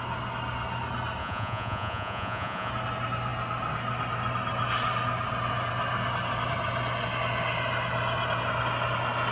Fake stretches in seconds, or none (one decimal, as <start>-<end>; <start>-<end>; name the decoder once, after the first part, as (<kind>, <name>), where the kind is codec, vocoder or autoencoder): 1.2-2.7 (vocoder, Vocos)